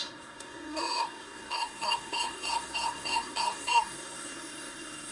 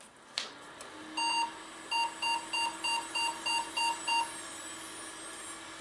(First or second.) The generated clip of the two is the first